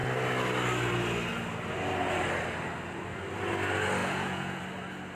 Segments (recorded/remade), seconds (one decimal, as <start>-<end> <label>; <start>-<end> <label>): 0.0-4.0 recorded; 4.0-4.6 remade; 4.6-5.2 recorded